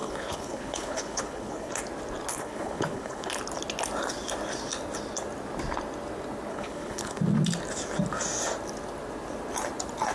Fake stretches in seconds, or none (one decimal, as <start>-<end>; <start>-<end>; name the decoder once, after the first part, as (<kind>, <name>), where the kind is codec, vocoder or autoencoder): 0.0-1.8 (codec, HILCodec); 2.3-3.3; 6.5-7.2